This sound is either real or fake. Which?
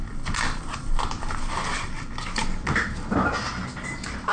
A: real